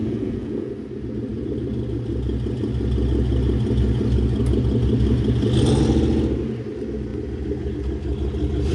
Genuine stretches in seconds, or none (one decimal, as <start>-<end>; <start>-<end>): 0.7-8.7